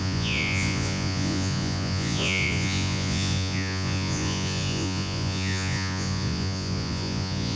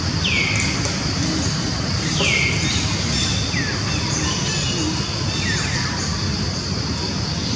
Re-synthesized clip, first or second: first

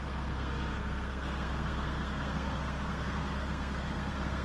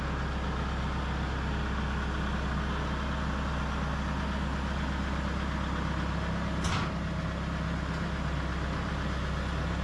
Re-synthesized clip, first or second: first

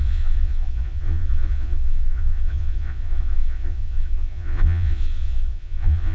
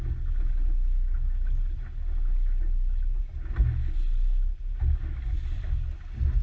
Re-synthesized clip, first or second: first